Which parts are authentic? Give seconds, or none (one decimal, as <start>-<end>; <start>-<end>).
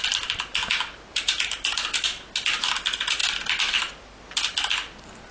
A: 0.0-1.1; 1.8-5.3